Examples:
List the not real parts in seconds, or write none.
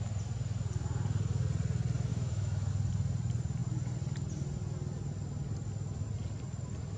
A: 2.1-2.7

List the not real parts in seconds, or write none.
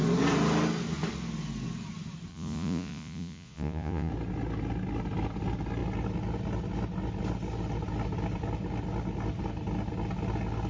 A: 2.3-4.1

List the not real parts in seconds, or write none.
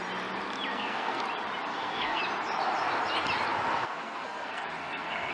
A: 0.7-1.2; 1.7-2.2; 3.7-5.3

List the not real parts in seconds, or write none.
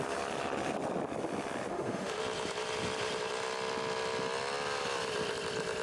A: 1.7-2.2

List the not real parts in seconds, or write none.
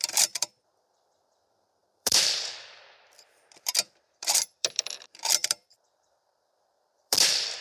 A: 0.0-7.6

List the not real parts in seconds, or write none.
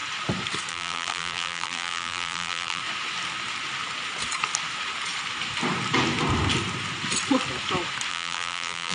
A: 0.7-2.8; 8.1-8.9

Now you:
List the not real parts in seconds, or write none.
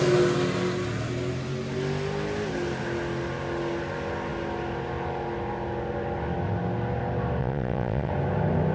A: 7.4-8.1